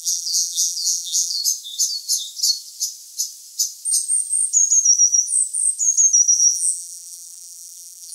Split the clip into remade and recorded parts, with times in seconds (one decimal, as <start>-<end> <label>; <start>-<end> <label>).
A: 0.0-1.4 remade; 1.4-6.3 recorded; 6.3-8.1 remade